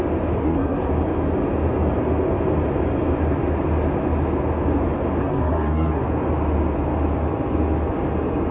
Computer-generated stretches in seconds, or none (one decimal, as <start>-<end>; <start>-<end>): 0.4-0.9; 5.2-6.0